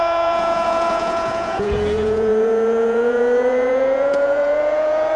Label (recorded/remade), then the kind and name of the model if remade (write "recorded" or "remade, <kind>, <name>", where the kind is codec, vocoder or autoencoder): remade, vocoder, Vocos